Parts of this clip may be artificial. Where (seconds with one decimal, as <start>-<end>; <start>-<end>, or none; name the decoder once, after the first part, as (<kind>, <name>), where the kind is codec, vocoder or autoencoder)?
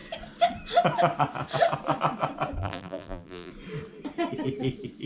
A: 2.6-3.5 (vocoder, BigVGAN v2)